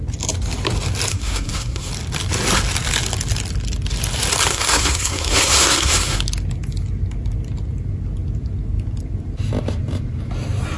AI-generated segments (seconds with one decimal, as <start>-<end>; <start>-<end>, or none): 1.1-1.9; 4.5-6.2

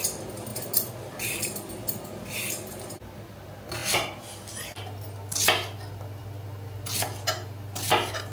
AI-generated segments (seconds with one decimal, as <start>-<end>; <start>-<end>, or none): none

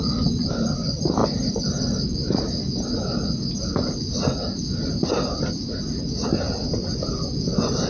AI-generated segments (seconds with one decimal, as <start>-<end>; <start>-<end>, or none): none

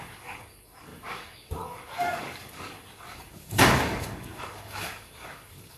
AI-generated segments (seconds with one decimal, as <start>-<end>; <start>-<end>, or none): 0.0-5.8

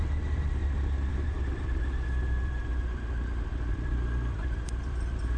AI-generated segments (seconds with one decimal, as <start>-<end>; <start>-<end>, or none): 0.0-0.6; 1.1-2.6; 3.7-5.4